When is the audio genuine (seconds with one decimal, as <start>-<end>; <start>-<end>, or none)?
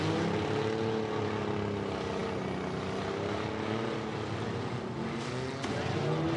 0.0-6.4